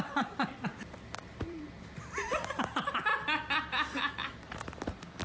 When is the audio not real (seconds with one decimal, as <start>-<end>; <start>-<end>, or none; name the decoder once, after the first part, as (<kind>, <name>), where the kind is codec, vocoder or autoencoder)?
0.0-3.1 (vocoder, BigVGAN v2); 4.1-5.2